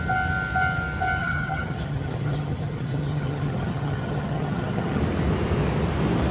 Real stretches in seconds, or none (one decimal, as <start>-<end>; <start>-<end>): 0.0-1.2; 5.0-6.3